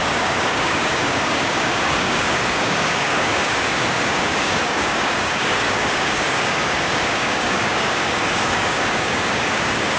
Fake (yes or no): yes